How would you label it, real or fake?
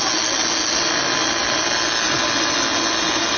real